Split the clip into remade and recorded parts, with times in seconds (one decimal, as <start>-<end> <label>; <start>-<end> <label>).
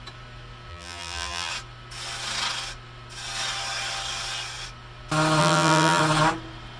0.0-0.7 recorded; 0.7-1.5 remade; 1.5-5.4 recorded; 5.4-6.0 remade; 6.0-6.8 recorded